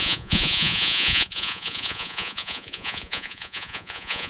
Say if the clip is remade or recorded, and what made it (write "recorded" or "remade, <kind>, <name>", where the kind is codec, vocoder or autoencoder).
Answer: remade, vocoder, Vocos